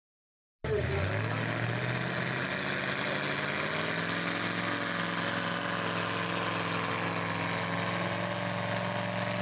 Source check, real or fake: real